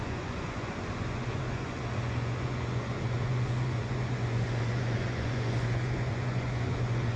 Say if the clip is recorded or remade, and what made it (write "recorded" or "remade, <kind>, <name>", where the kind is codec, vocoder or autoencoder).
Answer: remade, vocoder, Vocos